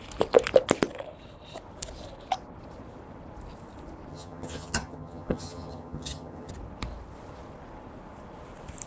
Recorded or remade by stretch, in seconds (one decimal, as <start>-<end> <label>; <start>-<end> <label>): 0.0-4.1 recorded; 4.1-6.5 remade; 6.5-8.9 recorded